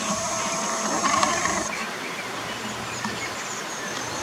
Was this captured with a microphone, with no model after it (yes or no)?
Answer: no